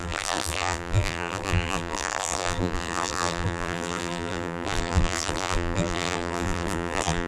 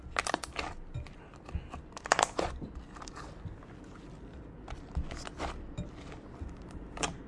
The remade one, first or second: first